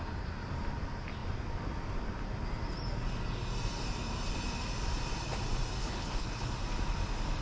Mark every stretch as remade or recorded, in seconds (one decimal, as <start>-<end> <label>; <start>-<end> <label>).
0.0-5.8 recorded; 5.8-6.5 remade; 6.5-7.4 recorded